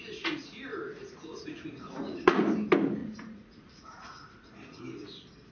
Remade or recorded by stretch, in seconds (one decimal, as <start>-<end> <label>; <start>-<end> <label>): 0.0-0.7 recorded; 0.7-2.4 remade; 2.4-3.0 recorded; 3.0-4.8 remade; 4.8-5.5 recorded